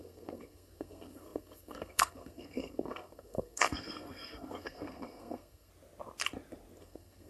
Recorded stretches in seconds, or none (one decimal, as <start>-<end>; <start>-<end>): 5.7-6.8